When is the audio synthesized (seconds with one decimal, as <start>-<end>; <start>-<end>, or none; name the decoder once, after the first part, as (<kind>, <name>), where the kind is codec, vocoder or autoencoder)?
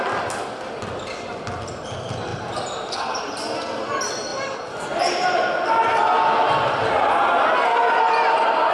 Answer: 2.3-3.2 (vocoder, BigVGAN v2)